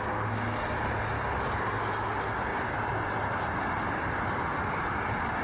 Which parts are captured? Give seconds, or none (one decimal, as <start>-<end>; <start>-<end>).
0.0-2.5; 3.7-5.4